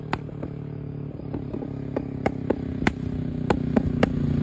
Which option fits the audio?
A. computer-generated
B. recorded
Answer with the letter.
B